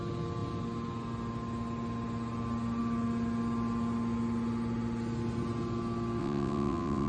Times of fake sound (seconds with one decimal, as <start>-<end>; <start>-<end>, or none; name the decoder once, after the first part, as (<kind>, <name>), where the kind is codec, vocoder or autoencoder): 6.2-7.1 (vocoder, WaveNeXt)